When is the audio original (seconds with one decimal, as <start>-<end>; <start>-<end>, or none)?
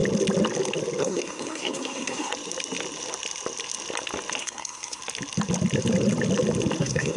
0.0-1.0; 2.3-4.4; 5.0-6.8